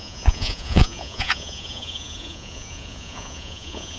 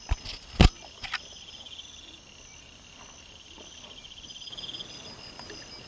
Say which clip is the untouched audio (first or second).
second